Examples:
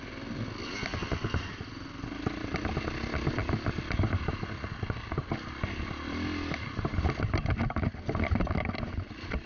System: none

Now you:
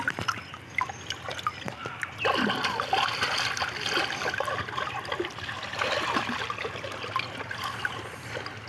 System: none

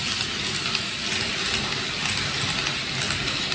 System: none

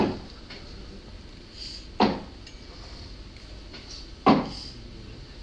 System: none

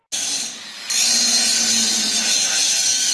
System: none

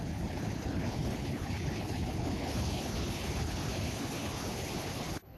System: codec, HILCodec